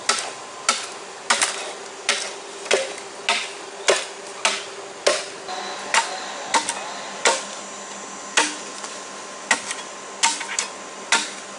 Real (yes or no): yes